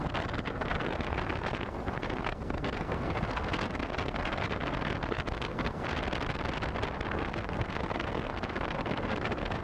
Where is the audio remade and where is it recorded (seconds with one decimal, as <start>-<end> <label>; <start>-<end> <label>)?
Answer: 0.0-5.9 remade; 5.9-7.1 recorded; 7.1-9.6 remade